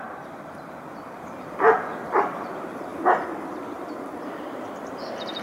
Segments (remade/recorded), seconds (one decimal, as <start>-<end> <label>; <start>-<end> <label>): 0.0-2.9 remade; 2.9-4.2 recorded; 4.2-5.4 remade